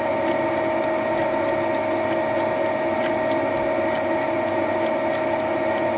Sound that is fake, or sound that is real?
real